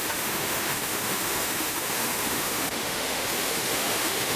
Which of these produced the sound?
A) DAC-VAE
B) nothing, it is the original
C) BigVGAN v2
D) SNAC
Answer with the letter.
A